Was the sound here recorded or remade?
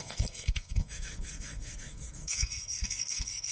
remade